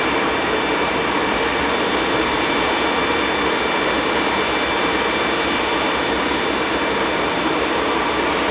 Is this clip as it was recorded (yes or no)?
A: yes